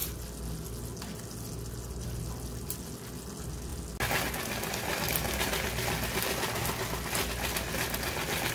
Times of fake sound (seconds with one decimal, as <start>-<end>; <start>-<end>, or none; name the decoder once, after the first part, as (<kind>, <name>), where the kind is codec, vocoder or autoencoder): none